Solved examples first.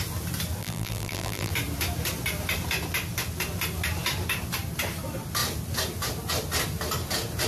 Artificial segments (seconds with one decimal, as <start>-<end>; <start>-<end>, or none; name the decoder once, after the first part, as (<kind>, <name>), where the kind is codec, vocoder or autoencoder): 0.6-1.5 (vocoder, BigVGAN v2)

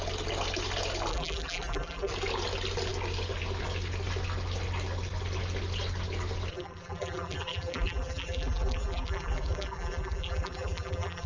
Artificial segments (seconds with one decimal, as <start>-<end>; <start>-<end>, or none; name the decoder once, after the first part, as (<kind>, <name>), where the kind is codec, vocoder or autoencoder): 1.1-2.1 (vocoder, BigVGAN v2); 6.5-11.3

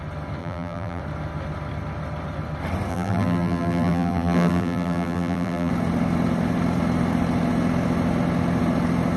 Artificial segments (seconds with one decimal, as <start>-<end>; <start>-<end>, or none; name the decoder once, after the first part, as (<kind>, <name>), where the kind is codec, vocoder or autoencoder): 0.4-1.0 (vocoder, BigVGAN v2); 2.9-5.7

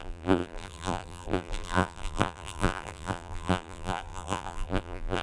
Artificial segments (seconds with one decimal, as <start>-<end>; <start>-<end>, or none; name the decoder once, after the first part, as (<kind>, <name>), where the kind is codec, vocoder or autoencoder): 0.0-5.2 (vocoder, BigVGAN v2)

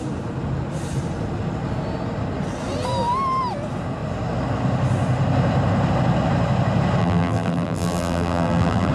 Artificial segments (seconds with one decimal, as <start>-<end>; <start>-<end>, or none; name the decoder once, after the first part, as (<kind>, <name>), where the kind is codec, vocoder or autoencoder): 7.0-8.9 (vocoder, BigVGAN v2)

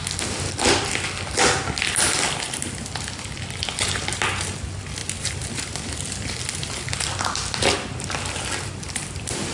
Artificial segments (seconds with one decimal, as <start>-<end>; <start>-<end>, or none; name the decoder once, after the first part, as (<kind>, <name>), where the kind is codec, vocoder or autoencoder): none

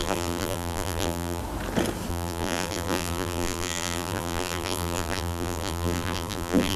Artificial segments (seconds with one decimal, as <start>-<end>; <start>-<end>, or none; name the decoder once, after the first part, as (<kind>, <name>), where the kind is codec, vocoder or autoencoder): 0.0-1.4 (vocoder, BigVGAN v2); 2.1-6.8

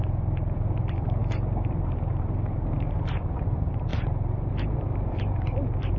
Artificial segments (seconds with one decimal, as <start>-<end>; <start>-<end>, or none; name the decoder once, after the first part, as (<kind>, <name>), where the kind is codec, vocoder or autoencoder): 0.0-1.2 (vocoder, BigVGAN v2); 2.1-6.0